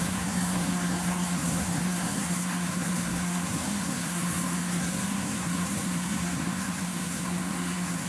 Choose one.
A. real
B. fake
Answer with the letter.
B